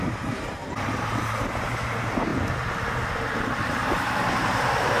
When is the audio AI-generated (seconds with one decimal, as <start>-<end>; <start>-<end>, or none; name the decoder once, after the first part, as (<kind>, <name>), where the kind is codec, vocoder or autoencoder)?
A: 0.0-0.6 (vocoder, BigVGAN v2); 1.6-2.3; 3.6-5.0